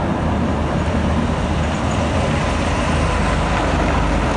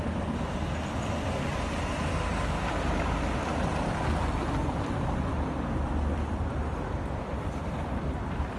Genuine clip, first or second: first